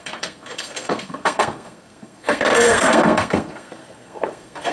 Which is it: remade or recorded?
remade